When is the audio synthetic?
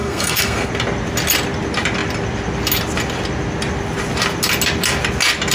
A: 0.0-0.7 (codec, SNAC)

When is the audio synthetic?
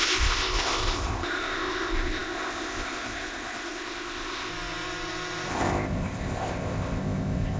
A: 0.0-4.5 (codec, ZipCodec); 5.5-7.6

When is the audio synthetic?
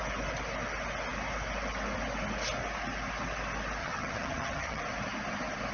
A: 3.8-4.8 (vocoder, HiFi-GAN)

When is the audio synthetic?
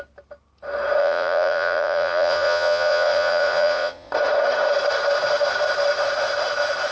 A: 1.0-4.1 (vocoder, Vocos)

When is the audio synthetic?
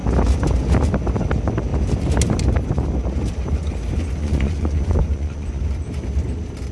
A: 4.2-5.6 (vocoder, Vocos)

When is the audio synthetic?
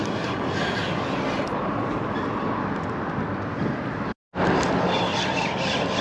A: 5.1-6.0 (vocoder, BigVGAN v2)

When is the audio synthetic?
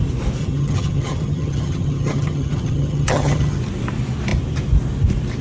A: 0.4-3.6 (vocoder, HiFi-GAN)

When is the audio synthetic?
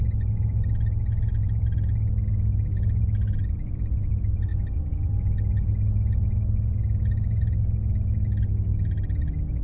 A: 1.4-2.0 (vocoder, BigVGAN v2)